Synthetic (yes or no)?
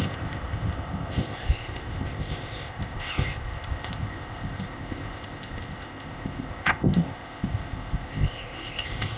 yes